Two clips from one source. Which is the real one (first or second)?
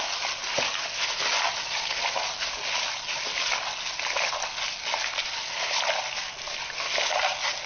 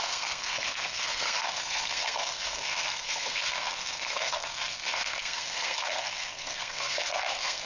first